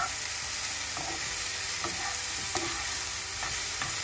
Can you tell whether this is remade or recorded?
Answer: recorded